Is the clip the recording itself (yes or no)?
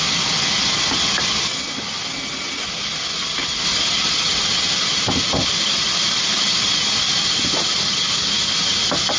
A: yes